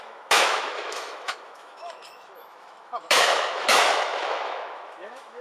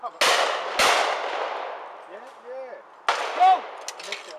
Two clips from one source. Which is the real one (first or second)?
second